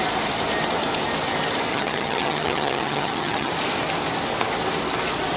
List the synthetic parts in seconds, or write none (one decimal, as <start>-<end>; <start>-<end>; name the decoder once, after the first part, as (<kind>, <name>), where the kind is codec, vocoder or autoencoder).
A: 1.7-3.5 (vocoder, HiFi-GAN)